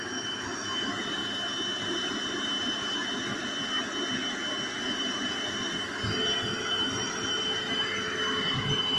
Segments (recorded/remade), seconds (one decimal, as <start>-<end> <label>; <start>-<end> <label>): 0.0-1.2 remade; 1.2-1.8 recorded; 1.8-3.4 remade; 3.4-4.8 recorded; 4.8-9.0 remade